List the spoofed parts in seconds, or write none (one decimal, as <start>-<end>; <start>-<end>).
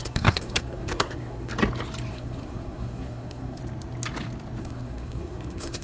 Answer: 0.0-1.5; 2.1-3.6; 4.6-5.8